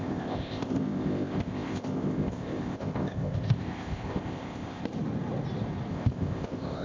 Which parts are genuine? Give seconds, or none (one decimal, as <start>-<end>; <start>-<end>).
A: 4.8-5.9